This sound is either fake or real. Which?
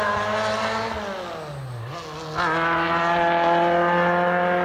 real